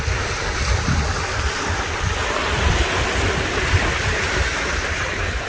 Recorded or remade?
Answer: recorded